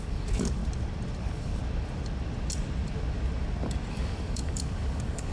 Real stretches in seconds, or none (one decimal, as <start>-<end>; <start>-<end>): 0.6-1.2; 1.6-3.9